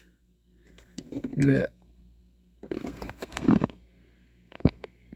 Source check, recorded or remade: remade